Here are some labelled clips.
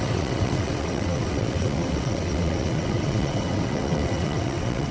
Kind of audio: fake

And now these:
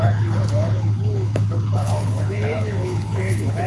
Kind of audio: fake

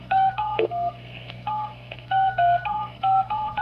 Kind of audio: fake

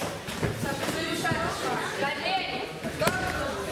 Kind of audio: real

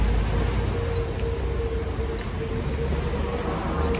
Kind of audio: real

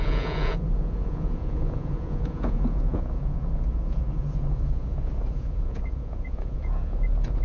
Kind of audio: fake